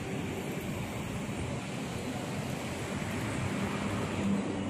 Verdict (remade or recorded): recorded